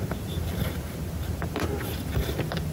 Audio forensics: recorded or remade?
recorded